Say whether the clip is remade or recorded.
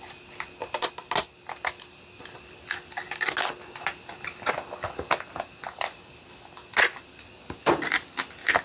recorded